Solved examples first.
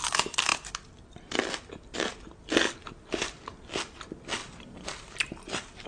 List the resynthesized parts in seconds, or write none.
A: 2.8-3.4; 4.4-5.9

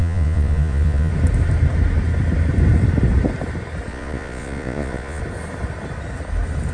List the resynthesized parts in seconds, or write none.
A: 0.0-1.1; 3.9-5.2

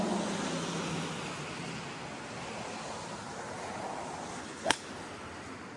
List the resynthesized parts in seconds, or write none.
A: 4.4-4.9

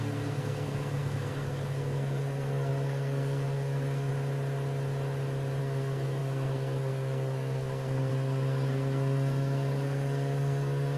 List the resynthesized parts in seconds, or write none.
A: 0.0-4.1; 5.6-11.0